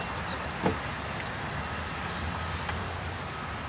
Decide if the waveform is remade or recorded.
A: recorded